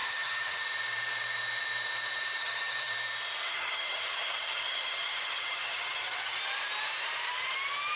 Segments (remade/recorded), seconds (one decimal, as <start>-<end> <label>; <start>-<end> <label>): 0.0-0.6 remade; 0.6-2.4 recorded; 2.4-2.9 remade; 2.9-3.5 recorded; 3.5-6.4 remade; 6.4-8.0 recorded